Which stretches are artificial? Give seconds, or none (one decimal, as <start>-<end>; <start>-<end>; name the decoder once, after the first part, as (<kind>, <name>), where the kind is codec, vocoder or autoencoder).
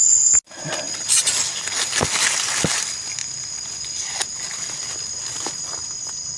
none